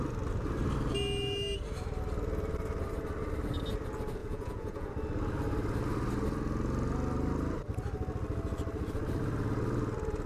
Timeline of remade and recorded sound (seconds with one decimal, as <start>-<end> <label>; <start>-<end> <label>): 0.0-4.2 recorded; 4.2-4.9 remade; 4.9-10.3 recorded